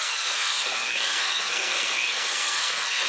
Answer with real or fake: fake